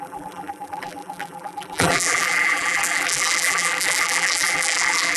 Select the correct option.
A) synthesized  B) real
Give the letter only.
A